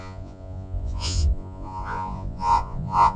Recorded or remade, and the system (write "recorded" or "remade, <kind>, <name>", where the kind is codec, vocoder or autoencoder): remade, vocoder, Vocos